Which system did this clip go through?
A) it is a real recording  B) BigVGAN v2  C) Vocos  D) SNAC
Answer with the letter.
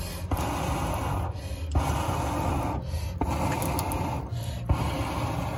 A